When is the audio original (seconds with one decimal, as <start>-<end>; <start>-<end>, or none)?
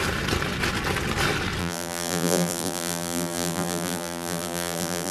0.0-1.6